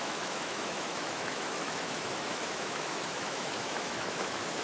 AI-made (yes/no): yes